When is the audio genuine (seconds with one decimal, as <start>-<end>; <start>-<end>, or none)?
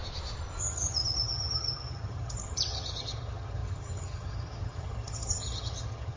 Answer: 0.0-0.6